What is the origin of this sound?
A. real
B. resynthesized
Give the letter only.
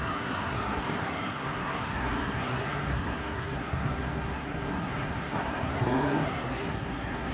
B